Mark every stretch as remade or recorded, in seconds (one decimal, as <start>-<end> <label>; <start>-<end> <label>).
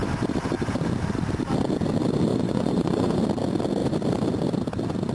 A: 0.0-2.3 recorded; 2.3-3.2 remade; 3.2-5.1 recorded